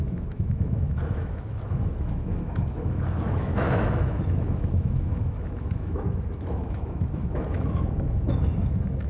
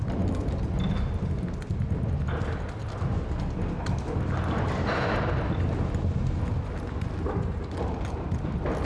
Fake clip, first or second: first